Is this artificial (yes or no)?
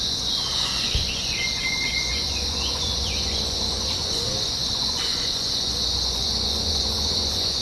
yes